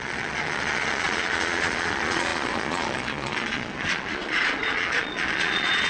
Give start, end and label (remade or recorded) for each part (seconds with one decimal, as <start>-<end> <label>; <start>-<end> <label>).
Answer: 0.0-5.9 remade